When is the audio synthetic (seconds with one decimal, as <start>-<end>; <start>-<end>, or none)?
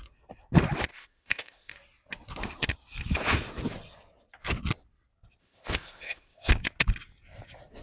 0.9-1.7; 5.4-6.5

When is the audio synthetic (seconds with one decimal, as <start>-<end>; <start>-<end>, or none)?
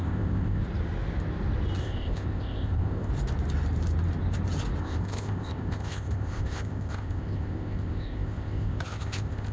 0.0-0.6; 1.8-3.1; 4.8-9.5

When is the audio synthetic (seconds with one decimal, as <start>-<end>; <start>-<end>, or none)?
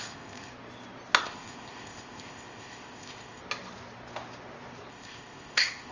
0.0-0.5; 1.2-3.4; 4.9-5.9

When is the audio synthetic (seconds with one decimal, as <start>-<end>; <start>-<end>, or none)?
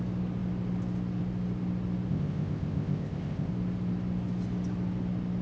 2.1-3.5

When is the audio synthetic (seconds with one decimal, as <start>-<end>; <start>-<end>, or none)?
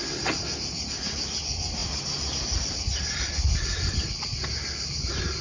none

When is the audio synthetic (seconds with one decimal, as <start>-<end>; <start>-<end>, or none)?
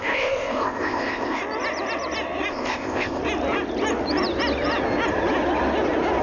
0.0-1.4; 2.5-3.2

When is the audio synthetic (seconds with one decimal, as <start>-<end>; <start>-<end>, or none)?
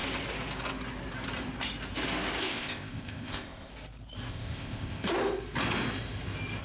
2.4-3.7; 4.3-5.1